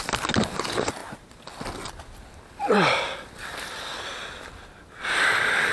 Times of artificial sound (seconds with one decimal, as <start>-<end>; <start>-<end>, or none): none